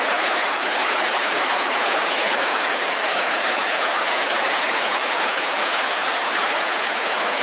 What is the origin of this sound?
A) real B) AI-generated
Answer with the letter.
B